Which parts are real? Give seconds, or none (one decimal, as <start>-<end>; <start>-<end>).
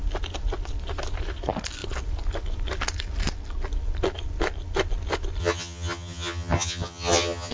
0.0-5.4